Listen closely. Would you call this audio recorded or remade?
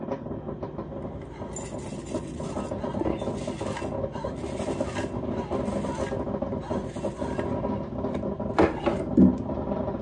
recorded